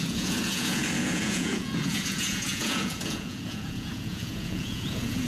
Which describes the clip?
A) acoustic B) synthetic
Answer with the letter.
B